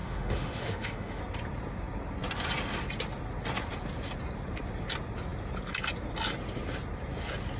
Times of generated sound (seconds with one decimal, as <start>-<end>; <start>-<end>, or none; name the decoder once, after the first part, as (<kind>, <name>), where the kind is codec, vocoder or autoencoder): 0.0-1.2 (autoencoder, DAC-VAE)